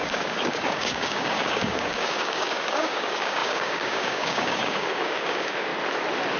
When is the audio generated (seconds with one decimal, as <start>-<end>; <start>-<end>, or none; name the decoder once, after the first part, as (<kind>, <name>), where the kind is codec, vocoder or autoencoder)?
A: 0.0-5.7 (codec, DAC)